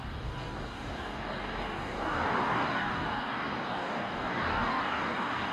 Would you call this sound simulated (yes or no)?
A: yes